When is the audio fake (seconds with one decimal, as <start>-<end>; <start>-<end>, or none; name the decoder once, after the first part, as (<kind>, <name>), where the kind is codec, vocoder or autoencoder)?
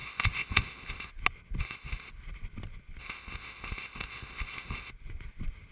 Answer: 0.0-1.1 (codec, ZipCodec); 1.6-2.1; 3.0-4.9